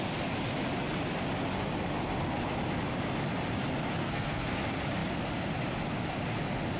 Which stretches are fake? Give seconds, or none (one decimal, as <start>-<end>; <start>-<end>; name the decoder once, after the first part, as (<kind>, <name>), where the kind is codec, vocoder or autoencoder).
4.0-4.6 (codec, SNAC)